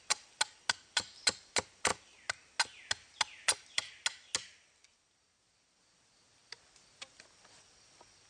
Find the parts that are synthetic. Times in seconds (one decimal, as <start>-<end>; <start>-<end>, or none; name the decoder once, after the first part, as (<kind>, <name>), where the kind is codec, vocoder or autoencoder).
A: none